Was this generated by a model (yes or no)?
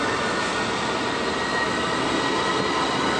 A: no